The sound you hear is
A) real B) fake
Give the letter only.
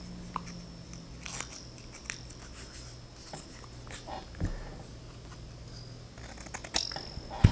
A